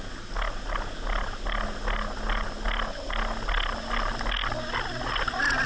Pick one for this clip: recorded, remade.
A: recorded